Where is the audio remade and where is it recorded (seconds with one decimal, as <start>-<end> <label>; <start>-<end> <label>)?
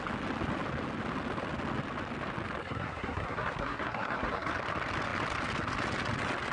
0.0-2.6 recorded; 2.6-4.5 remade; 4.5-6.5 recorded